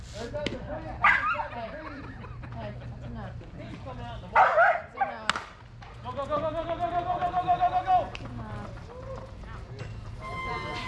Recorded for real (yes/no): yes